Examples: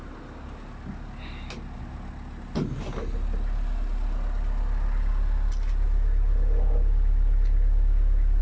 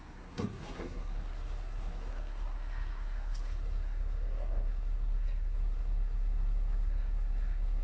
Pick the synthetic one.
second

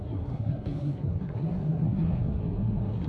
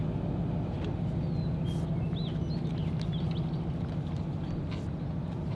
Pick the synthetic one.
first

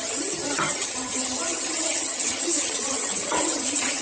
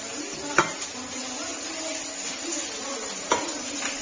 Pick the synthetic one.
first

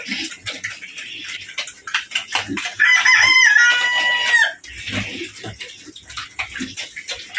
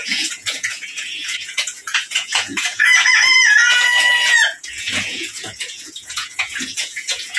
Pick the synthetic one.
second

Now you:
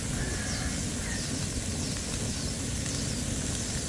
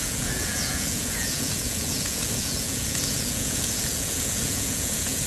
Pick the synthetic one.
second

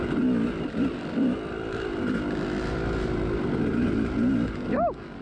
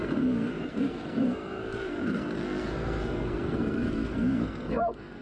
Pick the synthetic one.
second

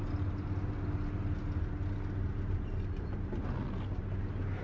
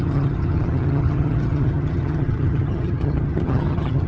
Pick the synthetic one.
second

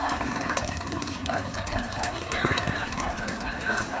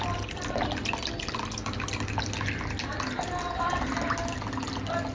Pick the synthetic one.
first